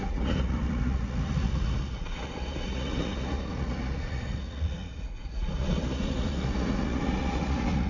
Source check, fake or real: fake